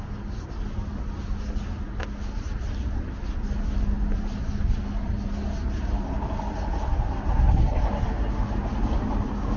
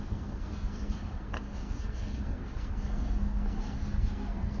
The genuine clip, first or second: first